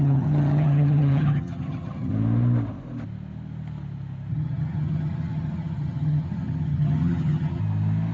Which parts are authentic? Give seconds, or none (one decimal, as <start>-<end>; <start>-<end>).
2.1-4.3; 7.6-8.1